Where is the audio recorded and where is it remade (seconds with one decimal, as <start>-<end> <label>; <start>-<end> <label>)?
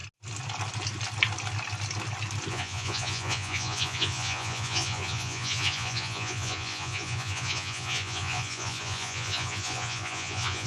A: 0.0-2.5 recorded; 2.5-10.7 remade